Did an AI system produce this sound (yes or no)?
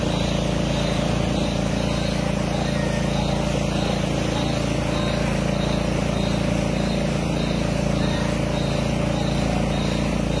no